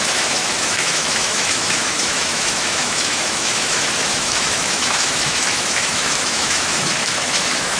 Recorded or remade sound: remade